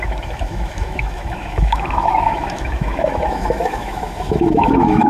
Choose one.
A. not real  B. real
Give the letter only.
A